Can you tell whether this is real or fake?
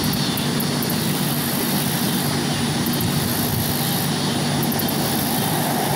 fake